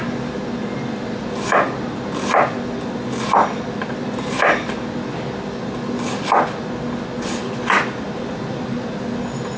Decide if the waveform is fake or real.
real